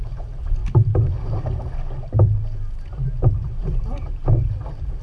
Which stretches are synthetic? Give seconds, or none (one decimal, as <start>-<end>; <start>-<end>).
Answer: 0.0-0.6; 3.6-4.2